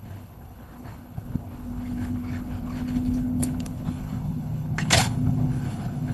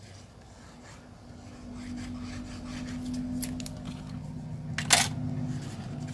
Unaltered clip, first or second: second